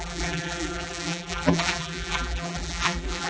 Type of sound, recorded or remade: remade